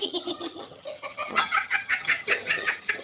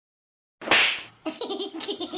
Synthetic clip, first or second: first